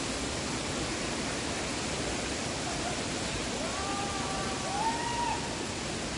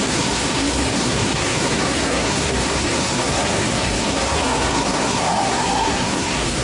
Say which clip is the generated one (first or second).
second